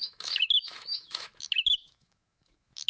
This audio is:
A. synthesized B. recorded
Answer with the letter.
A